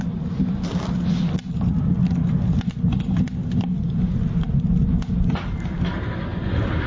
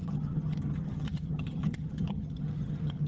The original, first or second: first